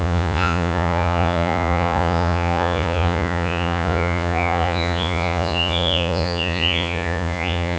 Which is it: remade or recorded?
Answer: remade